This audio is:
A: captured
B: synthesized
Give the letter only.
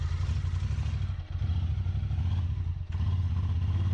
A